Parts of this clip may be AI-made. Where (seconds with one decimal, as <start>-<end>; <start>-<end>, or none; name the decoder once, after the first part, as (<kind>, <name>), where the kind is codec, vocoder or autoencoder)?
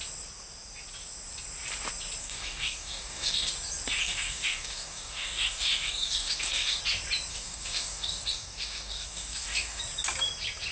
2.2-3.5 (codec, DAC); 4.0-6.8; 7.3-9.8